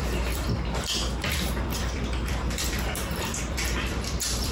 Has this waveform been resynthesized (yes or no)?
yes